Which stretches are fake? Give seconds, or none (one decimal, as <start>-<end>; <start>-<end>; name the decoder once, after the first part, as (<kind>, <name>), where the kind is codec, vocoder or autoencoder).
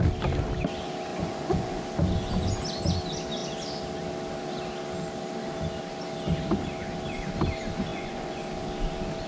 1.1-1.8 (vocoder, Vocos); 7.9-8.4